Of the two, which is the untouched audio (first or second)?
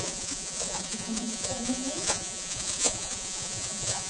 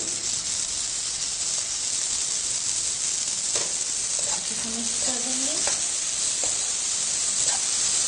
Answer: second